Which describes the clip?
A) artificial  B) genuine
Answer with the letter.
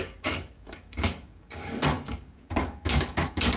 A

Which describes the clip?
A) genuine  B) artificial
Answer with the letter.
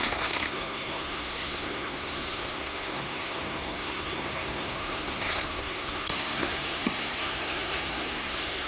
B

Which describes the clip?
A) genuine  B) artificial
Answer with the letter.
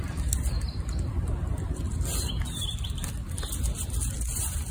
B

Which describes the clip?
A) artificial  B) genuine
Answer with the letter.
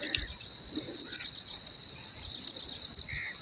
B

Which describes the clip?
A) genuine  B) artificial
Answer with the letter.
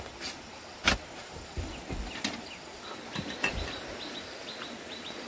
A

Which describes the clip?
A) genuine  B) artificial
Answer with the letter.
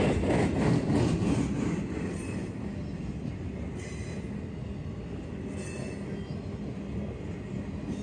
A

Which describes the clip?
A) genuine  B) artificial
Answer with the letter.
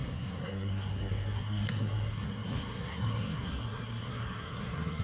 B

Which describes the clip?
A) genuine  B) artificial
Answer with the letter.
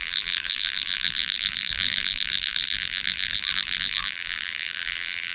B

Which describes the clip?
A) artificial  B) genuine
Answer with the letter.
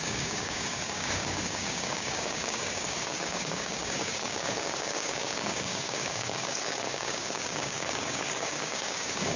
A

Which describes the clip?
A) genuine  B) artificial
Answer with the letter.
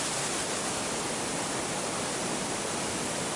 A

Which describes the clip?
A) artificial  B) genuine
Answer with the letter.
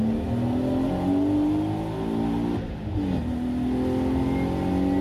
B